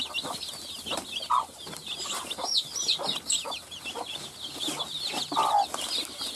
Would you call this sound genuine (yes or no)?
no